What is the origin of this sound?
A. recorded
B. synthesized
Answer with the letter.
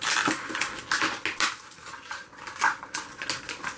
A